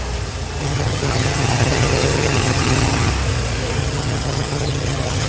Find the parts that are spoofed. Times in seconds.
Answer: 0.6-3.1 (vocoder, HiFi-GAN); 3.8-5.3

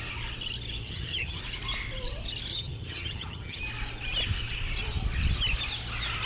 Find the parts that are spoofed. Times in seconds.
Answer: 0.8-1.4 (vocoder, HiFi-GAN); 2.5-3.6

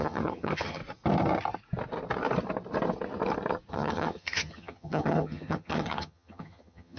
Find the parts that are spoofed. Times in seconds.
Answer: 0.0-0.8 (vocoder, HiFi-GAN); 3.7-7.0